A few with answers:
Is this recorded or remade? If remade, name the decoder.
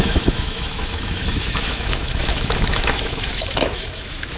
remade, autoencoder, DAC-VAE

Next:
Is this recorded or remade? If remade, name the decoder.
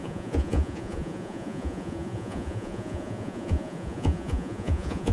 remade, vocoder, Vocos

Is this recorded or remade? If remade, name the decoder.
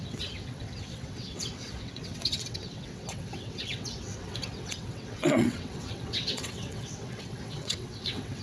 remade, vocoder, WaveNeXt